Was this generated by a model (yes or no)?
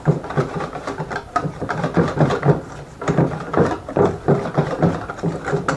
no